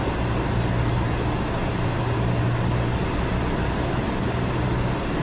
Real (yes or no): yes